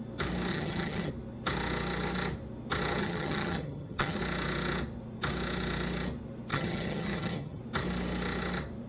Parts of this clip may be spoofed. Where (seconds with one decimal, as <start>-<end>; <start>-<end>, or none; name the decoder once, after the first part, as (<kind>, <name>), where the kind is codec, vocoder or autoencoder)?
0.5-1.1 (vocoder, HiFi-GAN); 3.0-4.2; 6.5-7.6